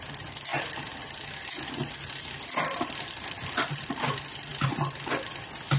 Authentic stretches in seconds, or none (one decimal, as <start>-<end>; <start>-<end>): 0.0-5.8